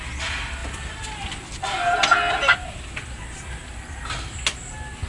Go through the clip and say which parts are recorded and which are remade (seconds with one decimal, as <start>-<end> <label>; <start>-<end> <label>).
0.0-5.1 recorded